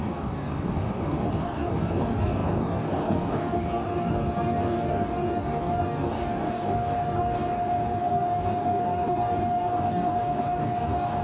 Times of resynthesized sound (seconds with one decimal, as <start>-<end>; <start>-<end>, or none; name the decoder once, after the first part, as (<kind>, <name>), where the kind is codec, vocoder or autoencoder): 0.0-11.2 (codec, DAC)